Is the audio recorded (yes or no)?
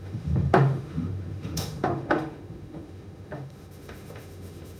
no